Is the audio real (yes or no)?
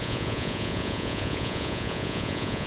no